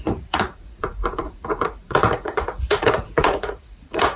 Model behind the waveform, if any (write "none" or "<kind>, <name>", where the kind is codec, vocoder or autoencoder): vocoder, Vocos